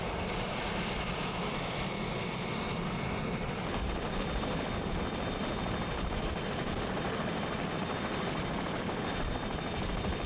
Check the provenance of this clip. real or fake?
real